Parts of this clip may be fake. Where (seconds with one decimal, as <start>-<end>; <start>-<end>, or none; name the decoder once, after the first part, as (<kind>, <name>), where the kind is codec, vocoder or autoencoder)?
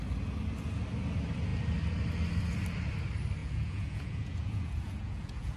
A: 3.4-5.6 (vocoder, Vocos)